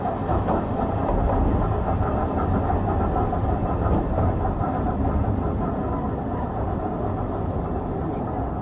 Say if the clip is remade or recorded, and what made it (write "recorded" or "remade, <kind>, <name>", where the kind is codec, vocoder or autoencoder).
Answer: recorded